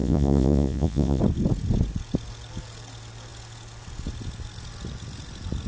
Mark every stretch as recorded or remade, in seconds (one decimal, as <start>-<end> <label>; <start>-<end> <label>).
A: 0.0-1.2 remade; 1.2-5.7 recorded